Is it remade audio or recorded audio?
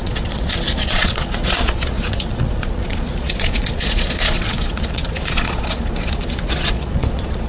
remade